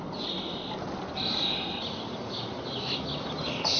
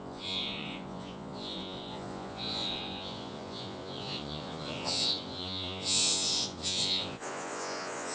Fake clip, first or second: second